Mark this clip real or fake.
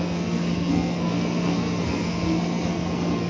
fake